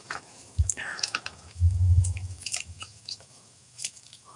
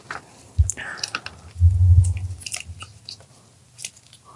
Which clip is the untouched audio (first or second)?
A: second